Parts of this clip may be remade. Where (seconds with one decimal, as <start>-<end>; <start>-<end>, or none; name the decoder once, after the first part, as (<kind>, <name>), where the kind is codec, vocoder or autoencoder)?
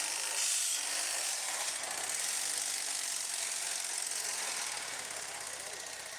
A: none